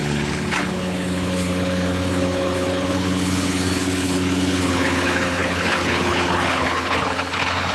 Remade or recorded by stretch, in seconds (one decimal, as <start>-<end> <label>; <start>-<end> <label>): 0.0-7.7 remade